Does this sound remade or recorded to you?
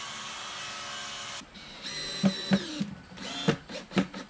recorded